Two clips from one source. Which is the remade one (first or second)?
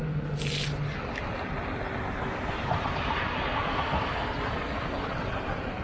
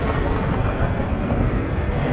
second